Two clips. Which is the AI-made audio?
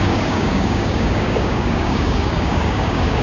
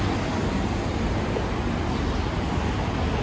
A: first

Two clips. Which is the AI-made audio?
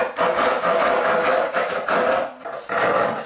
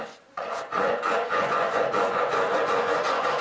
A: second